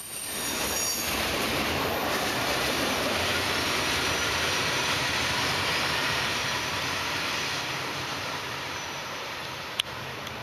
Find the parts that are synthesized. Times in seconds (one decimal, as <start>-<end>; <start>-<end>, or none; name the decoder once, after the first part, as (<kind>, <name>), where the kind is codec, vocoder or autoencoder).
0.0-9.4 (vocoder, BigVGAN v2); 10.0-10.4